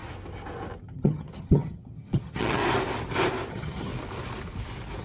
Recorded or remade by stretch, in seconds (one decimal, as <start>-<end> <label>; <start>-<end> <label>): 0.0-0.8 recorded; 0.8-2.6 remade; 2.6-3.5 recorded; 3.5-3.9 remade; 3.9-5.0 recorded